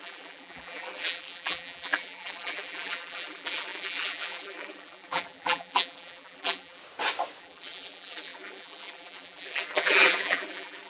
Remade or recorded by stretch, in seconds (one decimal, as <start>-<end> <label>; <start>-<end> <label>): 0.0-6.8 remade; 6.8-7.4 recorded; 7.4-10.9 remade